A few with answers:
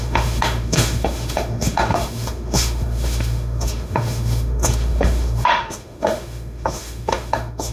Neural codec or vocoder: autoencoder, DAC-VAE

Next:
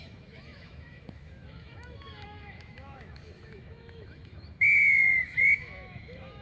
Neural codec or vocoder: autoencoder, DAC-VAE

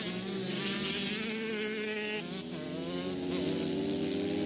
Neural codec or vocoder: none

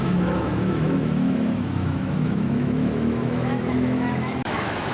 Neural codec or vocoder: autoencoder, DAC-VAE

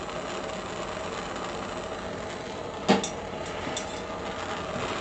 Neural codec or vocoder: none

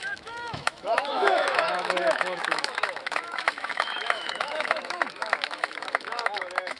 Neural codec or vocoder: autoencoder, DAC-VAE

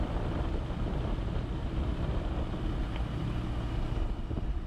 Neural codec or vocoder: none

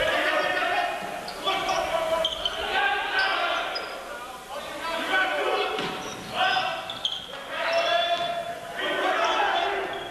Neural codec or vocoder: none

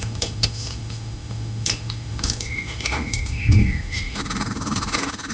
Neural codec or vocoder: autoencoder, DAC-VAE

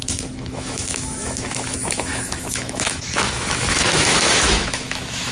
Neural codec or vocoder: autoencoder, DAC-VAE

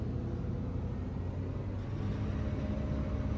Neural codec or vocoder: none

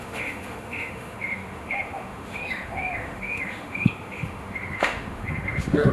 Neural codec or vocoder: autoencoder, DAC-VAE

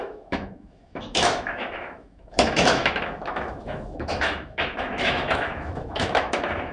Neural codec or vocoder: autoencoder, DAC-VAE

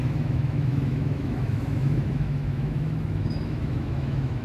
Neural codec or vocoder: autoencoder, DAC-VAE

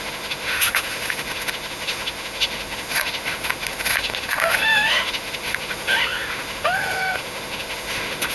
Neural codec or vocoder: autoencoder, DAC-VAE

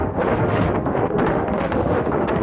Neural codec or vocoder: autoencoder, DAC-VAE